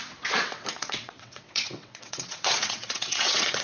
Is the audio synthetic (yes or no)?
yes